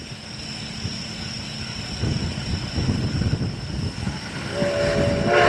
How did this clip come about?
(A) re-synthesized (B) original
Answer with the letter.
B